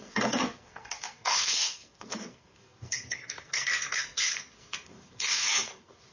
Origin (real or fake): fake